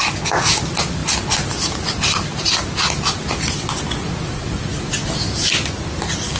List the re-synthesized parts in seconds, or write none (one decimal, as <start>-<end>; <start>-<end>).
4.0-4.9